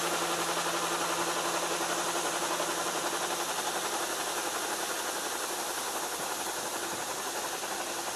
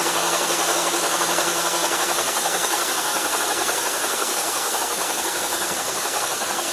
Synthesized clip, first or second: second